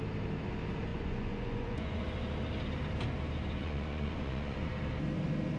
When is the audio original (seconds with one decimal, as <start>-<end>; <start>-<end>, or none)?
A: 0.0-0.9; 2.0-3.6; 4.7-5.6